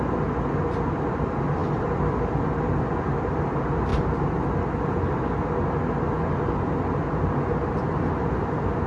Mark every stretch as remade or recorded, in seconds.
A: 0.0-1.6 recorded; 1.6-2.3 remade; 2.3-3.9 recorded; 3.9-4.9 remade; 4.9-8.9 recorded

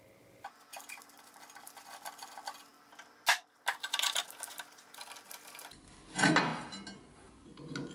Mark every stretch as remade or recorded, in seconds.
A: 0.0-7.9 recorded